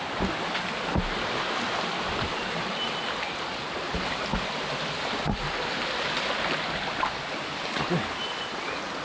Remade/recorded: recorded